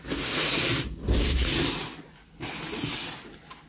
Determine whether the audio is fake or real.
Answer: real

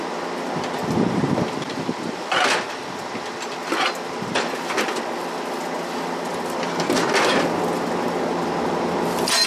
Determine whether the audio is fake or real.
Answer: real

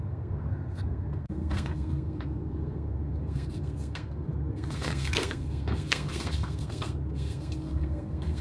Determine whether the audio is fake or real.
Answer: fake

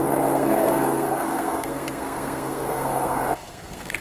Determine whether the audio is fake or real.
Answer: fake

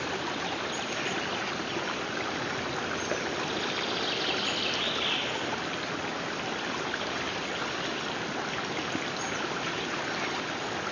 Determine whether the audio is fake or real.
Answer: real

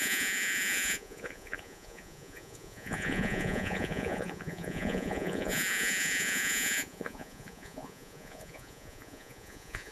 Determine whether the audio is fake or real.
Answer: fake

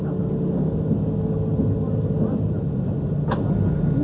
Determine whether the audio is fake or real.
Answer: real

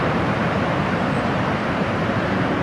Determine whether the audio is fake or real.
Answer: fake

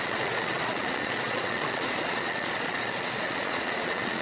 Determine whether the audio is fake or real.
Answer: fake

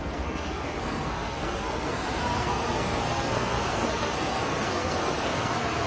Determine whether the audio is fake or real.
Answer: fake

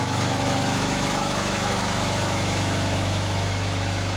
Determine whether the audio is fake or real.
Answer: fake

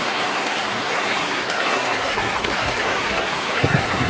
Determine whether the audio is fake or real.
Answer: fake